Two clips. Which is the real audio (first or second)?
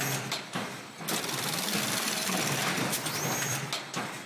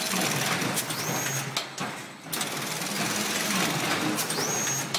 second